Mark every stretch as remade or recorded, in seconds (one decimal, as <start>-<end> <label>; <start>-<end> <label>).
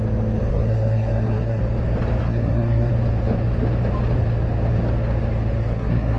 0.0-0.5 recorded; 0.5-1.6 remade; 1.6-2.2 recorded; 2.2-2.9 remade; 2.9-5.6 recorded; 5.6-6.2 remade